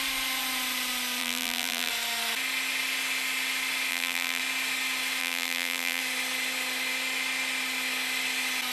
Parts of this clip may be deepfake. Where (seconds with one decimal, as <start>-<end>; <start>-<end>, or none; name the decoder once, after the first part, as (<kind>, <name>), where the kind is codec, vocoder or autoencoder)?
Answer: 1.2-1.9 (vocoder, BigVGAN v2); 3.9-4.4; 5.2-6.0